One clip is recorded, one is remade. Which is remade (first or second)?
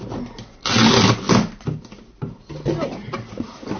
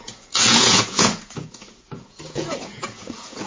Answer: second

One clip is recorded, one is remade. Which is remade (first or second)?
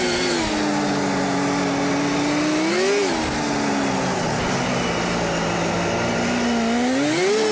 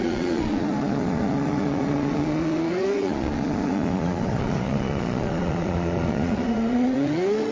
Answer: second